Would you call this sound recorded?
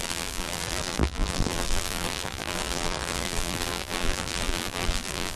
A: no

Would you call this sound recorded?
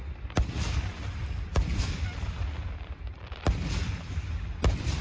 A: no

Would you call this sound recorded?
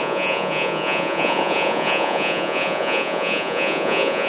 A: no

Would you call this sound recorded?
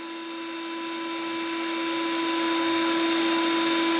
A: yes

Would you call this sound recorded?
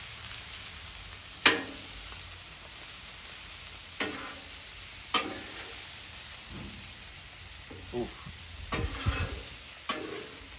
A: yes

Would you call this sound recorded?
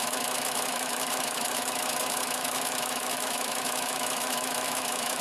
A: no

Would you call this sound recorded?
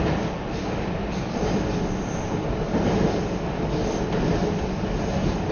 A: yes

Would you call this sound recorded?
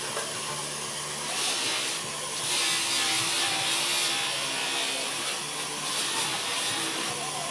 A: yes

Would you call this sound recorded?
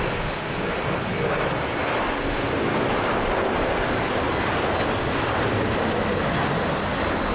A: yes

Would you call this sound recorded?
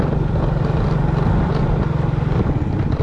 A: no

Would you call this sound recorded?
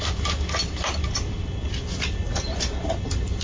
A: yes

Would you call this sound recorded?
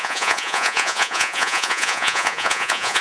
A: no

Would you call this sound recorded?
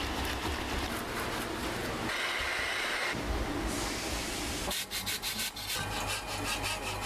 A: yes